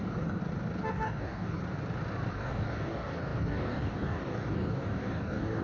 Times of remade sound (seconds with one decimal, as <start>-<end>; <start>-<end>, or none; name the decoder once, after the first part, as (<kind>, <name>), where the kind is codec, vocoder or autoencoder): 0.0-0.4 (codec, DAC); 0.9-1.6; 2.3-5.6